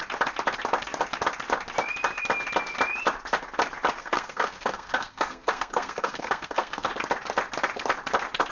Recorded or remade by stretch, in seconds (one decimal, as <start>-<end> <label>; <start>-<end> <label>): 0.0-4.0 recorded; 4.0-6.9 remade; 6.9-8.5 recorded